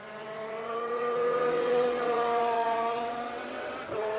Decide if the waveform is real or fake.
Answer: fake